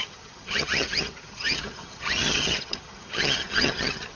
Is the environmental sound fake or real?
fake